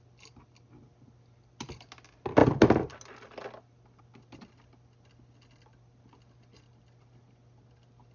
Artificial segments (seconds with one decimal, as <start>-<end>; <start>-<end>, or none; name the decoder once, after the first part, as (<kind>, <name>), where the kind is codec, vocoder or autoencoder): none